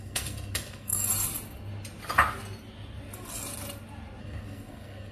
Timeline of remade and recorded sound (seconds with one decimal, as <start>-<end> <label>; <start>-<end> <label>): 0.0-1.1 remade; 1.1-4.2 recorded; 4.2-5.1 remade